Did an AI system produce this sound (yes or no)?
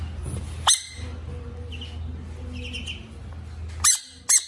no